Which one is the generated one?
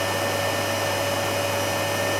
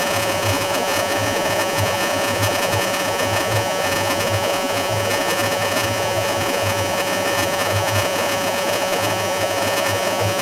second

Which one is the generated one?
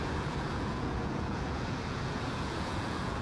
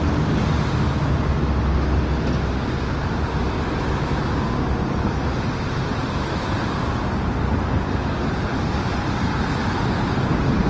first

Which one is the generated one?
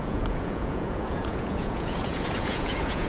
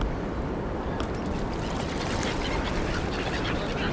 first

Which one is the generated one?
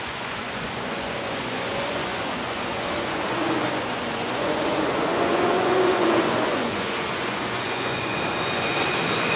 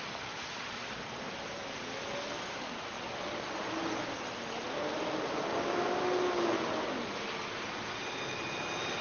first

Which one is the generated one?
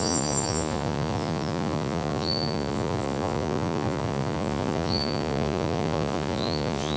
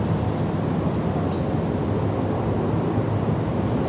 first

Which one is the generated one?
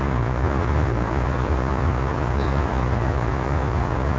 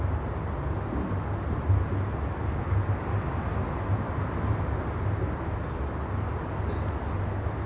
first